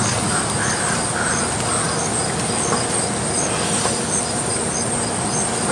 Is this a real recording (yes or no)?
yes